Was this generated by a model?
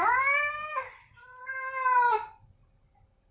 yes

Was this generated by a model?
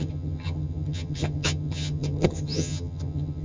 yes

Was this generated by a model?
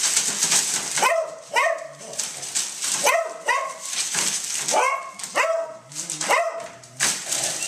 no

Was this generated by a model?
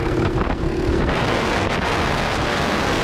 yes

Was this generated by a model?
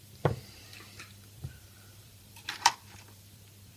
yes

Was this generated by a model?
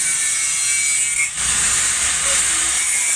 no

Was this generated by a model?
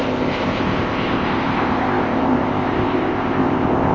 yes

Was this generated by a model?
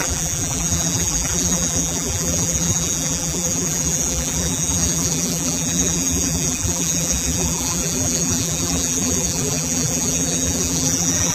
yes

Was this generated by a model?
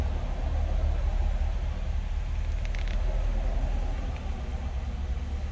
no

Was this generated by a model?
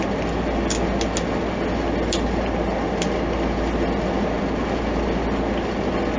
no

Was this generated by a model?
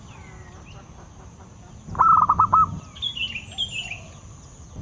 no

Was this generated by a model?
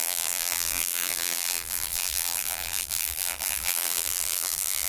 yes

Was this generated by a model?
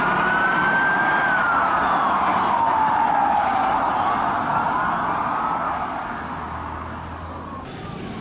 no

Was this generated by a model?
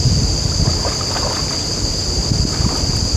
no